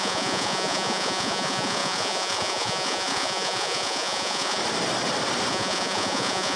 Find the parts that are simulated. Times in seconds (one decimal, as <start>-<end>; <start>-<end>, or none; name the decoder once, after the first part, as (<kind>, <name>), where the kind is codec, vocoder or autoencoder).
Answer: 0.0-4.6 (vocoder, Vocos); 5.5-6.6